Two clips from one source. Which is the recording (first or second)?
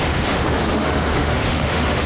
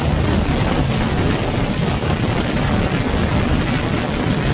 second